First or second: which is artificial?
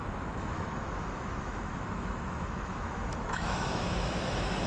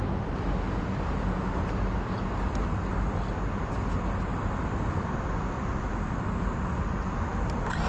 first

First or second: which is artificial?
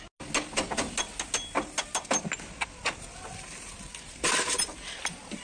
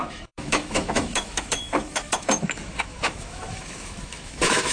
second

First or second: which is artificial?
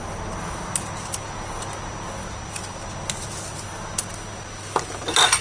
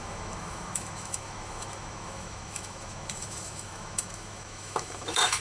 second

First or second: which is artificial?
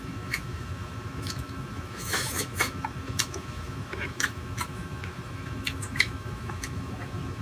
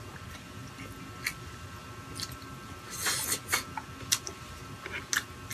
first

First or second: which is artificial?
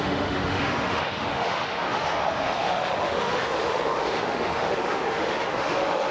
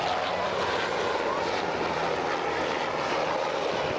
first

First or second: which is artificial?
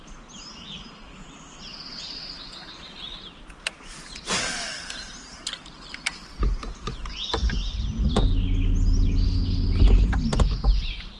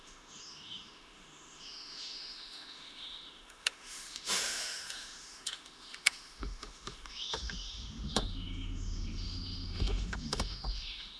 second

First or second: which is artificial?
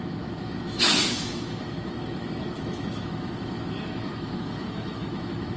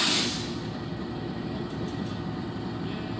first